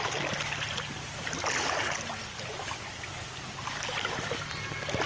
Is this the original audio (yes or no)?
yes